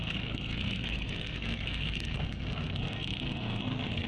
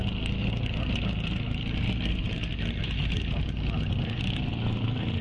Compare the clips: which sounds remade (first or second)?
first